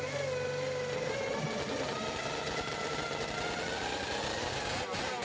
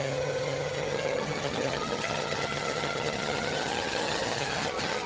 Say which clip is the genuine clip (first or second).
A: first